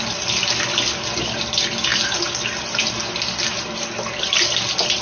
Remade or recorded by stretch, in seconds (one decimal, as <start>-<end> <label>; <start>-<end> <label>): 0.0-5.0 recorded

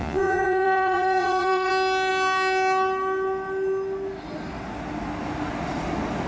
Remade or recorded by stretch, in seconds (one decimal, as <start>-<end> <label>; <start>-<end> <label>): 0.0-1.7 remade; 1.7-6.3 recorded

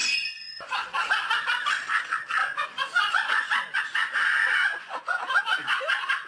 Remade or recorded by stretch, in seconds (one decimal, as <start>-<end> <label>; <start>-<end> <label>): 0.0-0.7 remade; 0.7-2.4 recorded; 2.4-5.4 remade; 5.4-6.3 recorded

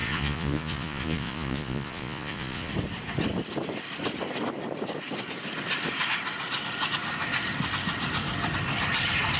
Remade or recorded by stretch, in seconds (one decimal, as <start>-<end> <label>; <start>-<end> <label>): 0.0-2.7 remade; 2.7-9.4 recorded